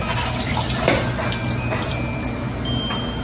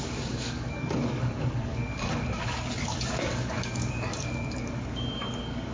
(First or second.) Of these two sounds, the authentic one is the first